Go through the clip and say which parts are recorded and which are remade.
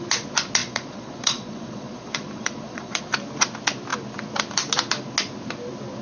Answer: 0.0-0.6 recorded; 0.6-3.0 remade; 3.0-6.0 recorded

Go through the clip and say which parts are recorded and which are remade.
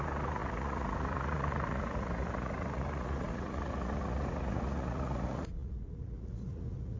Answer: 0.0-7.0 remade